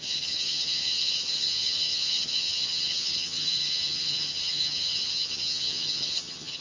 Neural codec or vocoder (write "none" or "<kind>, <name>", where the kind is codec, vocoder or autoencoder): vocoder, HiFi-GAN